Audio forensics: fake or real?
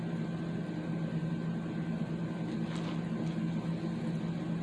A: real